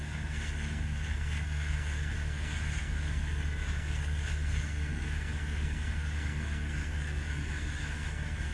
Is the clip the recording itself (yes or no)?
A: no